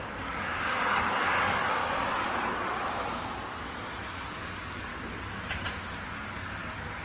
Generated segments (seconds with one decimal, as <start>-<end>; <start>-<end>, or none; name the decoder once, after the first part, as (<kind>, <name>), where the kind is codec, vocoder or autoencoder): 0.0-1.8 (codec, DAC); 4.1-4.9; 6.1-7.0